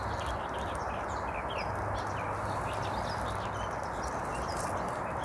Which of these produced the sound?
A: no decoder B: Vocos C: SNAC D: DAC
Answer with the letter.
A